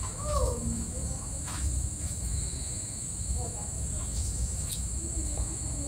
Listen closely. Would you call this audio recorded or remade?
remade